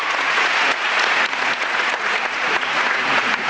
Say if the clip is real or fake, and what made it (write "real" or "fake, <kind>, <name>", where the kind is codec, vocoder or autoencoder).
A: fake, vocoder, Vocos